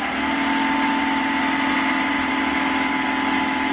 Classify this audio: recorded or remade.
recorded